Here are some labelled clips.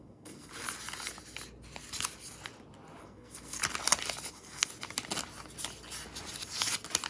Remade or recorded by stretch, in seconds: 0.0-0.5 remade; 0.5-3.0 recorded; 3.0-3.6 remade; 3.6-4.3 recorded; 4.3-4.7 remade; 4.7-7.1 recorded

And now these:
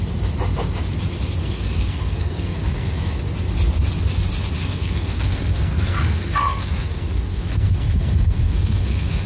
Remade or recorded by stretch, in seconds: 0.0-1.4 recorded; 1.4-3.2 remade; 3.2-4.6 recorded; 4.6-9.3 remade

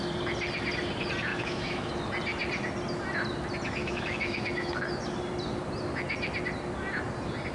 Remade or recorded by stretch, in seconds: 0.0-1.3 recorded; 1.3-1.9 remade; 1.9-3.8 recorded; 3.8-4.7 remade; 4.7-7.5 recorded

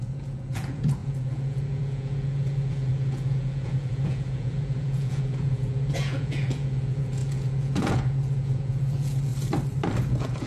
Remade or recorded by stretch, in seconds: 0.0-9.3 remade; 9.3-10.0 recorded; 10.0-10.5 remade